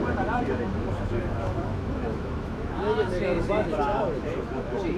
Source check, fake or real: fake